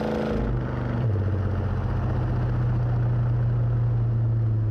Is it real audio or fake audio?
real